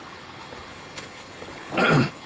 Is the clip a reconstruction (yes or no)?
yes